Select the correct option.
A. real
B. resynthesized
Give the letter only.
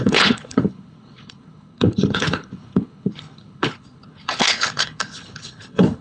B